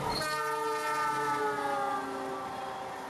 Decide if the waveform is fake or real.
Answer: real